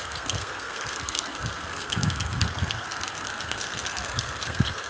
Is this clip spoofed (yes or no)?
yes